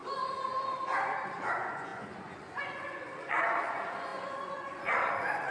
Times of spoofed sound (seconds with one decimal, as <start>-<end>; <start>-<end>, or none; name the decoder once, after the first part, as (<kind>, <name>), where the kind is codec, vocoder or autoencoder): 1.5-5.5 (vocoder, Vocos)